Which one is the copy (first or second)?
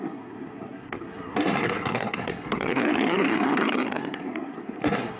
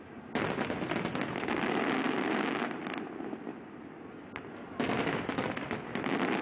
first